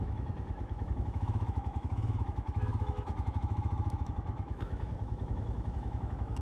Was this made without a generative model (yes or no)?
no